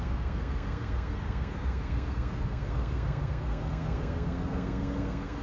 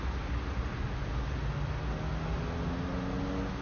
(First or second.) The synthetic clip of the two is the first